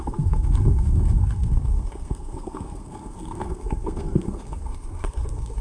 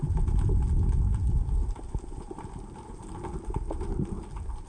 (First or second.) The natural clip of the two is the second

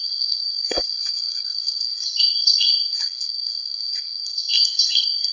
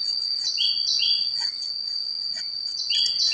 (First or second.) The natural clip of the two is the second